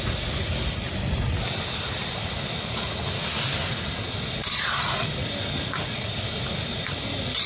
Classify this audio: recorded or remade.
recorded